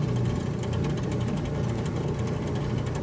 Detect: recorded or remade recorded